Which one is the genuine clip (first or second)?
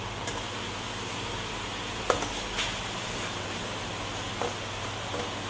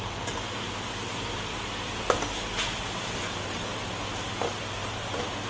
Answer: first